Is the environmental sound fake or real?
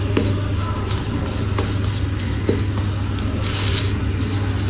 real